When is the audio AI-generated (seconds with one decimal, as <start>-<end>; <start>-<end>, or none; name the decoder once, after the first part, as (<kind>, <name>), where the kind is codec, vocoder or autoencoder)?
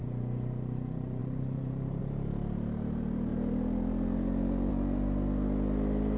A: 1.2-2.0 (vocoder, BigVGAN v2)